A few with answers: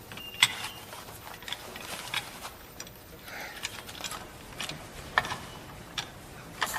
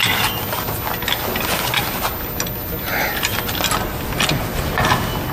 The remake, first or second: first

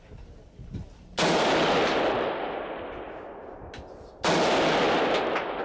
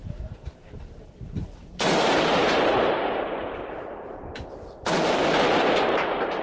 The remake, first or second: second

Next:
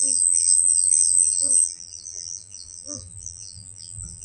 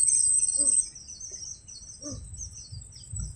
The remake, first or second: first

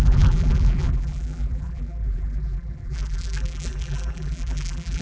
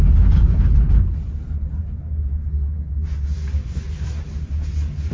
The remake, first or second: first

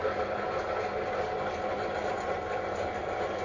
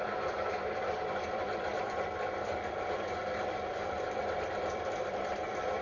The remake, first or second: second